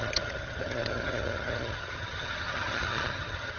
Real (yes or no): no